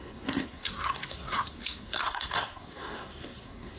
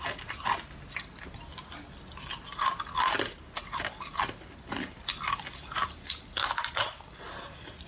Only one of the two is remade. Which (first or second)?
first